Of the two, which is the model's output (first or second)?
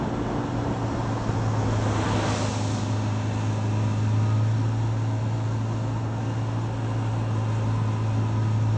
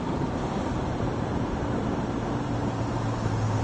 second